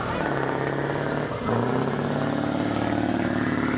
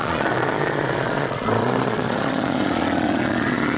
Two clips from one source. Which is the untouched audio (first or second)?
first